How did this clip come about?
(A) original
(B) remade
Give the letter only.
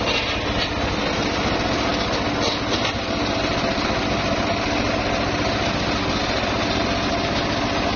A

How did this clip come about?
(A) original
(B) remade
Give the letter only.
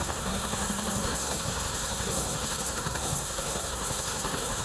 B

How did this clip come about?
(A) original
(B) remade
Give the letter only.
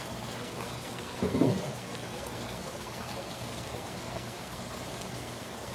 B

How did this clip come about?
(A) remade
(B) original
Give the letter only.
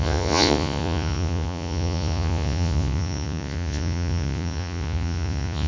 A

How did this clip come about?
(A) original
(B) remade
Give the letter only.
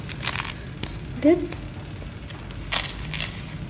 A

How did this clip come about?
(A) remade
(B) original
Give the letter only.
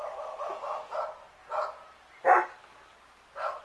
B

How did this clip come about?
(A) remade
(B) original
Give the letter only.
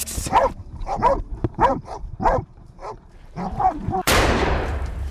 A